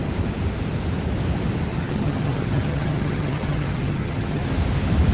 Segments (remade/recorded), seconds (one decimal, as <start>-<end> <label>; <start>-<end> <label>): 0.0-1.7 recorded; 1.7-4.4 remade; 4.4-5.1 recorded